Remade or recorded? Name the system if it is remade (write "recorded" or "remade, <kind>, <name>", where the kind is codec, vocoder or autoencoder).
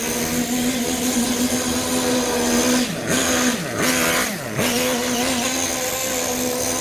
recorded